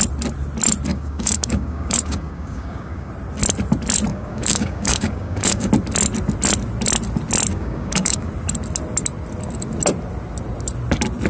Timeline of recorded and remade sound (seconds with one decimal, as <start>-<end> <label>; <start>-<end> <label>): 0.0-0.9 recorded; 0.9-3.1 remade; 3.1-4.1 recorded; 4.1-5.7 remade; 5.7-7.5 recorded; 7.5-8.3 remade; 8.3-11.3 recorded